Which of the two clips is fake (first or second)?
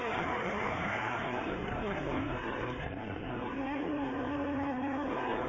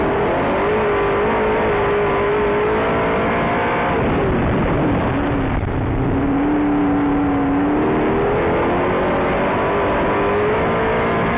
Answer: first